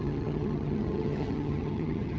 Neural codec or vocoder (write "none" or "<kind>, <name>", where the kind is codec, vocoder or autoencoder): vocoder, HiFi-GAN